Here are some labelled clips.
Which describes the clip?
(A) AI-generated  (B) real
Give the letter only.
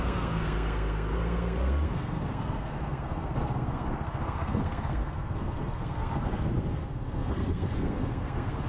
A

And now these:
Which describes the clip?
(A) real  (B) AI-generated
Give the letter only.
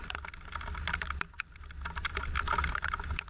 A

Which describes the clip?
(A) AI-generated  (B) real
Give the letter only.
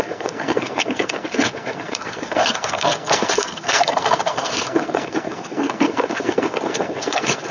A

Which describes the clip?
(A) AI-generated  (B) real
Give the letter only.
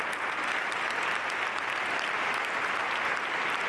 B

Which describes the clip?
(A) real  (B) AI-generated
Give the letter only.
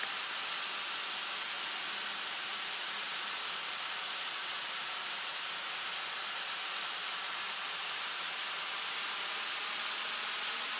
A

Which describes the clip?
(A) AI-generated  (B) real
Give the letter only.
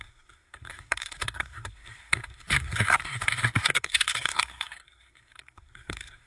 A